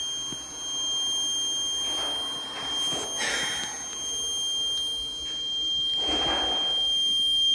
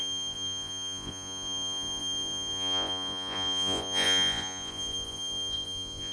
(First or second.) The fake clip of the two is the second